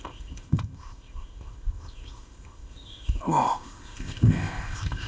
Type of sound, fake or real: fake